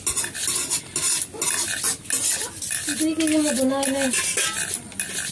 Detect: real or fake real